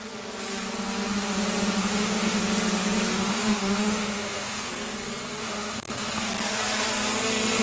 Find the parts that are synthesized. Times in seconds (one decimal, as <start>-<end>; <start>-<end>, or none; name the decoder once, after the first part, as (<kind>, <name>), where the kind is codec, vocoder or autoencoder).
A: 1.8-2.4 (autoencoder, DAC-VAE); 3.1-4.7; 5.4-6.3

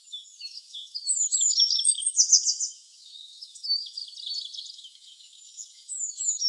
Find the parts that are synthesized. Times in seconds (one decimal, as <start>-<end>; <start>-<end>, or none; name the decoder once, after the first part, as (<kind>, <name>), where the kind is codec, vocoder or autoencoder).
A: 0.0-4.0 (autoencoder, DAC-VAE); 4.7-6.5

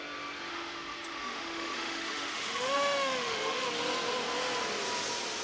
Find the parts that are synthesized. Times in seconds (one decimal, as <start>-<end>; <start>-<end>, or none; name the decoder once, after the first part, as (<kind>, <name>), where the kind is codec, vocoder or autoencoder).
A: 0.5-3.7 (autoencoder, DAC-VAE)